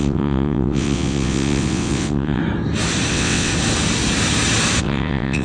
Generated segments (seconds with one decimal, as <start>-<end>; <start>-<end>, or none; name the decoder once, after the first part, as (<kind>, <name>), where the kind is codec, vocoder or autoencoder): 0.0-2.4 (vocoder, WaveNeXt); 3.1-3.5; 4.8-5.4